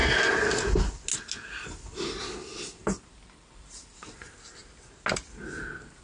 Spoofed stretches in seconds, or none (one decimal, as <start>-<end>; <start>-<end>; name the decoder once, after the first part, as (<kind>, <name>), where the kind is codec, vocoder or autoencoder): 2.2-4.6 (vocoder, BigVGAN v2); 5.6-6.0